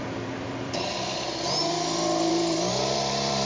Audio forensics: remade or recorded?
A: remade